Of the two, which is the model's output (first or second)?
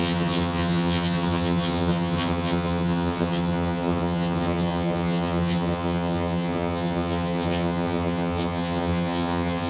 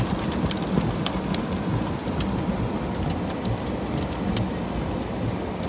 first